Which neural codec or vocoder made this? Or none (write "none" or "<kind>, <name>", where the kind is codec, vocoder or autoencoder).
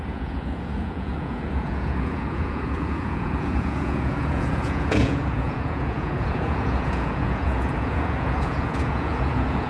vocoder, Vocos